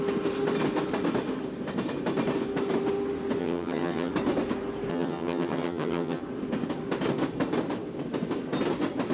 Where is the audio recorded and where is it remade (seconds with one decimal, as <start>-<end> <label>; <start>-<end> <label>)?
0.0-3.4 recorded; 3.4-4.1 remade; 4.1-4.9 recorded; 4.9-6.2 remade; 6.2-9.1 recorded